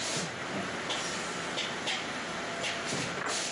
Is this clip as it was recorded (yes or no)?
yes